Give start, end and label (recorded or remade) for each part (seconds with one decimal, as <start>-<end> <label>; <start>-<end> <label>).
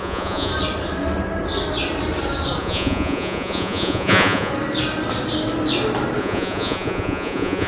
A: 0.0-0.5 remade; 0.5-2.6 recorded; 2.6-4.5 remade; 4.5-6.2 recorded; 6.2-7.7 remade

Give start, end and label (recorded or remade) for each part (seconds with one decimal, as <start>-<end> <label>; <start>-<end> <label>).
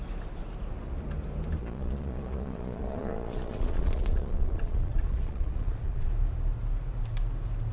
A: 0.0-1.6 recorded; 1.6-6.1 remade; 6.1-7.7 recorded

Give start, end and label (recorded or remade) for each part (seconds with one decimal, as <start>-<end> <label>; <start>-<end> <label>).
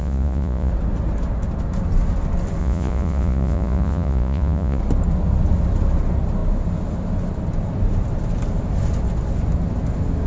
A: 0.0-0.7 remade; 0.7-2.6 recorded; 2.6-4.8 remade; 4.8-10.3 recorded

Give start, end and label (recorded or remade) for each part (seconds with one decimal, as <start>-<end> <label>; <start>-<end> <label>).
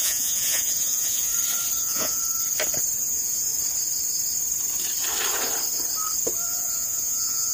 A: 0.0-1.3 remade; 1.3-1.8 recorded; 1.8-2.2 remade; 2.2-3.0 recorded; 3.0-3.5 remade; 3.5-6.5 recorded; 6.5-7.5 remade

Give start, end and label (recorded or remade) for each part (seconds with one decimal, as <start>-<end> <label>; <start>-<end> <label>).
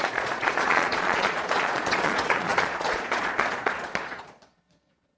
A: 0.0-5.2 remade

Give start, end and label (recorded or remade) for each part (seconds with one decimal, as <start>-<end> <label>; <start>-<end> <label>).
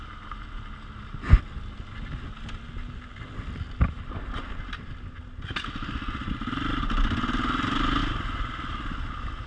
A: 0.0-9.5 recorded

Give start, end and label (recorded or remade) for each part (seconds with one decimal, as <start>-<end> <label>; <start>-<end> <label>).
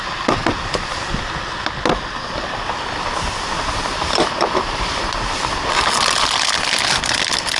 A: 0.0-7.6 recorded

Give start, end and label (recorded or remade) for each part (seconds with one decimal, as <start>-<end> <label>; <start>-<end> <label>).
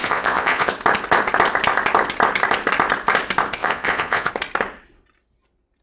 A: 0.0-0.7 remade; 0.7-3.6 recorded; 3.6-4.3 remade; 4.3-5.8 recorded